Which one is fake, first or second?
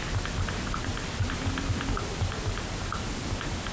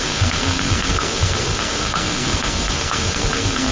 second